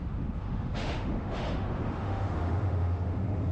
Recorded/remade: remade